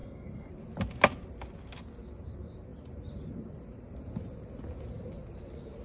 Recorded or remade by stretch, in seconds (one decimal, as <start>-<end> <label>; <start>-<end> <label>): 0.0-0.5 remade; 0.5-5.8 recorded